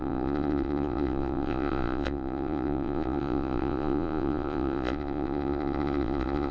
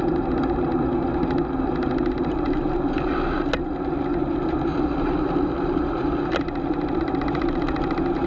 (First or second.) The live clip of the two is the second